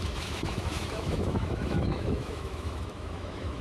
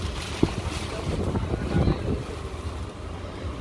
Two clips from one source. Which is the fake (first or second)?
first